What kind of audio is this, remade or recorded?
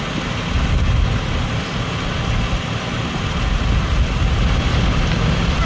recorded